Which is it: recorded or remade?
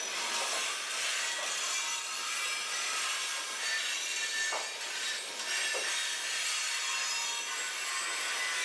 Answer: recorded